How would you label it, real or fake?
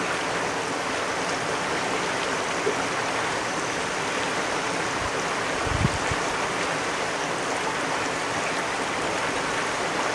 real